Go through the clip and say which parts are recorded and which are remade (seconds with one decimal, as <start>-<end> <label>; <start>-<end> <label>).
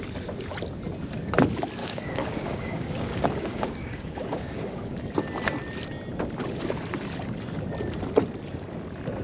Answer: 0.0-1.8 recorded; 1.8-5.0 remade; 5.0-9.2 recorded